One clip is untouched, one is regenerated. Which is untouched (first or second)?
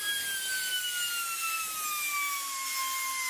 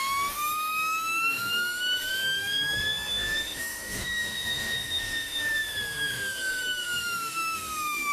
first